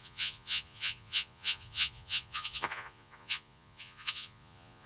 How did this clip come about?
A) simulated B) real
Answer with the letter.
A